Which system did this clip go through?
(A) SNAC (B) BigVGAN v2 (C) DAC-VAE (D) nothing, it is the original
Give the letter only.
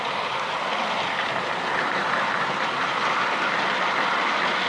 D